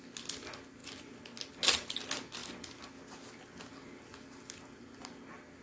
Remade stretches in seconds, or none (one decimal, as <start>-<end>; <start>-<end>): none